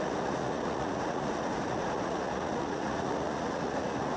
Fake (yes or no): yes